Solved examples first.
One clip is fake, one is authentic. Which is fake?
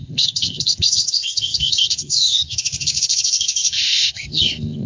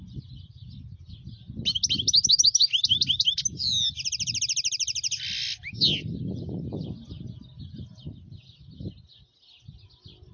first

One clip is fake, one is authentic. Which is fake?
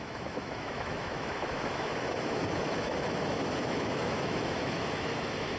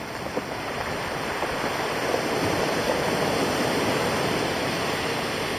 first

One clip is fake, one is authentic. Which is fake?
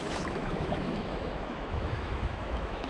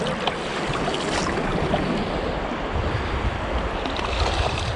first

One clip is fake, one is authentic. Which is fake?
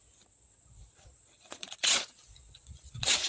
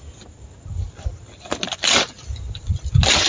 first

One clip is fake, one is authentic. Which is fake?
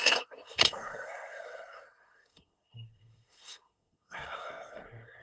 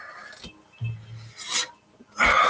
first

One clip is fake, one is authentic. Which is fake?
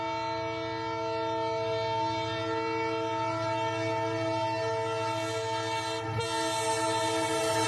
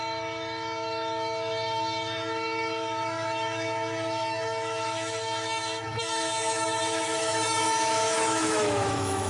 second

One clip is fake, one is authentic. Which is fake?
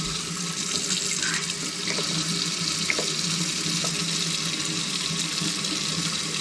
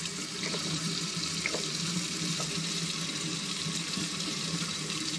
second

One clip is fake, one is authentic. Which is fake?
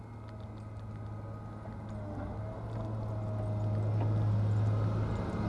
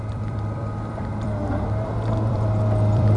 second